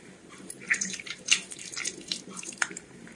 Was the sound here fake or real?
fake